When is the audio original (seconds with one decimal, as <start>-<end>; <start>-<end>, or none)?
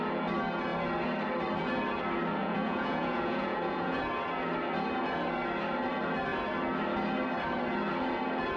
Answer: 0.0-2.4; 4.0-8.6